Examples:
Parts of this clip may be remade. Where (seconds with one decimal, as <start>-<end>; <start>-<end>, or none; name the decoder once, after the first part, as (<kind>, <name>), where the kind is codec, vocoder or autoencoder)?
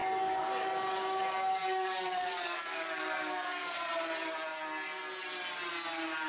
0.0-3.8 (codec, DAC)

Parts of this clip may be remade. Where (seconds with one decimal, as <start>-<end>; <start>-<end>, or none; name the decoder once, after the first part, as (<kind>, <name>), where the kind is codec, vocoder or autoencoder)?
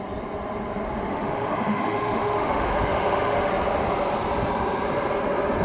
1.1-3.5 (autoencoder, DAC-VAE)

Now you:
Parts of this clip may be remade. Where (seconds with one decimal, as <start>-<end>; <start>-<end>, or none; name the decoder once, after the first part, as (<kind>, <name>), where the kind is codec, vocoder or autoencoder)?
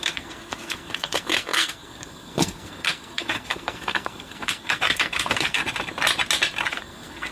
0.0-5.6 (codec, SNAC); 6.7-7.3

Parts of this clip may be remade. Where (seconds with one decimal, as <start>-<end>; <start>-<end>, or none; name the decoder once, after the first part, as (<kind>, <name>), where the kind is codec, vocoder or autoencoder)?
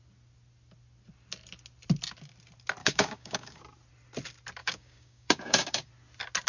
2.8-3.6 (codec, DAC); 4.6-5.9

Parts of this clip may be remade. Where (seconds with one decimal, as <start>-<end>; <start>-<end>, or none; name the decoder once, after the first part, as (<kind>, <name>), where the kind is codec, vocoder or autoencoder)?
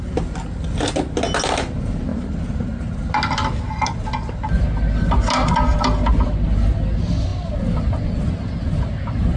2.1-2.8 (vocoder, BigVGAN v2)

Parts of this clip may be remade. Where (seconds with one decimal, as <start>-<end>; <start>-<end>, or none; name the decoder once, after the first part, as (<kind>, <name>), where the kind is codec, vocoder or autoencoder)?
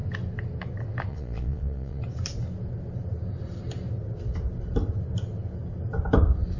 1.1-2.0 (vocoder, Vocos)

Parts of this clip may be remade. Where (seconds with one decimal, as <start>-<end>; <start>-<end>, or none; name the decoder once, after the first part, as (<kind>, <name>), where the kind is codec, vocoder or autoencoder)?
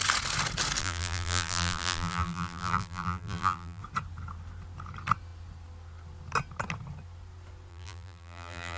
0.8-3.8 (vocoder, BigVGAN v2); 7.7-8.8